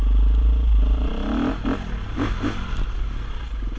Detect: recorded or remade recorded